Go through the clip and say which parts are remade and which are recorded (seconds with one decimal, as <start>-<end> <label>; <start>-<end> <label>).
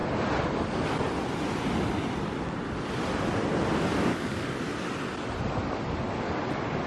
0.0-4.1 recorded; 4.1-4.6 remade; 4.6-6.9 recorded